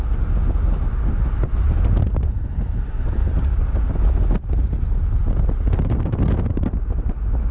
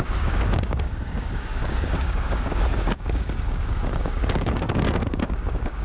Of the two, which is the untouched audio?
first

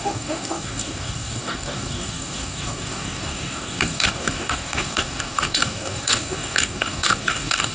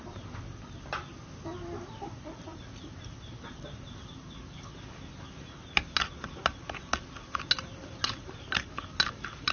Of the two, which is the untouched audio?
second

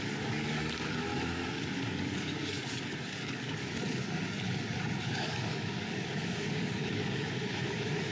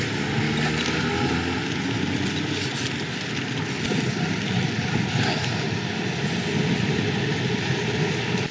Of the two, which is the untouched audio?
second